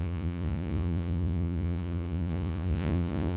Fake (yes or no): yes